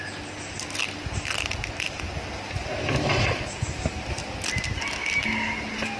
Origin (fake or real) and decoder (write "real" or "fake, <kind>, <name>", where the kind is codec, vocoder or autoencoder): real